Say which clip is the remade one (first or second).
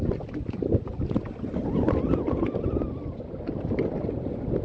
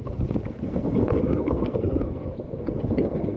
second